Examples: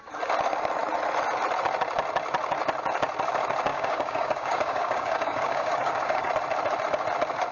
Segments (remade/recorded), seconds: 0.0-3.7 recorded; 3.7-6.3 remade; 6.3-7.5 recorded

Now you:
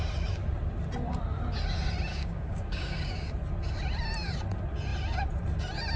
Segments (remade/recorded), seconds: 0.0-2.1 recorded; 2.1-3.3 remade; 3.3-6.0 recorded

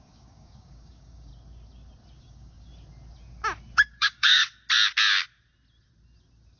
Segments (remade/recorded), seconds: 0.0-1.3 remade; 1.3-2.2 recorded; 2.2-2.7 remade; 2.7-3.8 recorded; 3.8-4.5 remade; 4.5-6.6 recorded

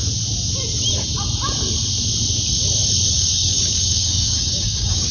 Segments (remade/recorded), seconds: 0.0-3.1 recorded; 3.1-5.1 remade

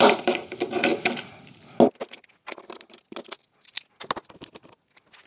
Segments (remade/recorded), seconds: 0.0-5.3 recorded

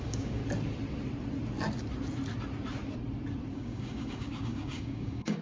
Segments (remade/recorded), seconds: 0.0-0.4 remade; 0.4-3.5 recorded; 3.5-5.4 remade

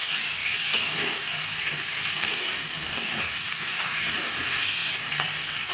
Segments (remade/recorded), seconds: 0.0-5.7 remade